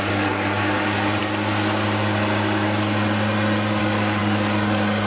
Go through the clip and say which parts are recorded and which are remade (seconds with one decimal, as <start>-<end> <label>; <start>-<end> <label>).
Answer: 0.0-1.2 remade; 1.2-3.8 recorded; 3.8-5.1 remade